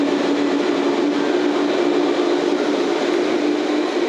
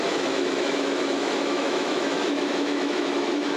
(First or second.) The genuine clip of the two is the first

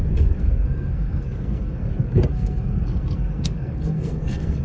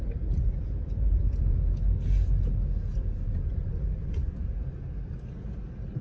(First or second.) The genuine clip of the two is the second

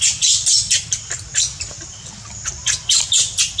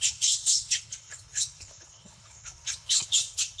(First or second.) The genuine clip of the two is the first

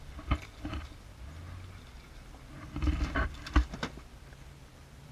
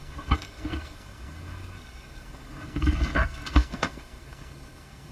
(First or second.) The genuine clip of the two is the first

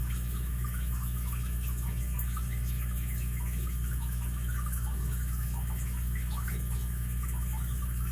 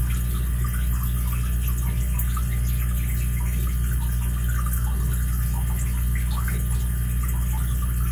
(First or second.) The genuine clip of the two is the second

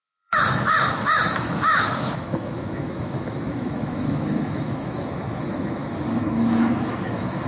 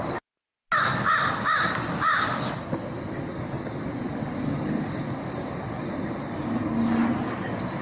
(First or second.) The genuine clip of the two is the second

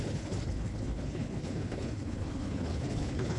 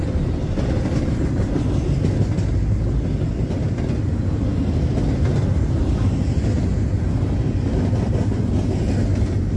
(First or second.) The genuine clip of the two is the second